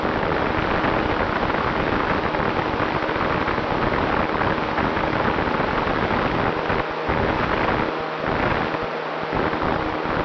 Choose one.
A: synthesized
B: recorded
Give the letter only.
B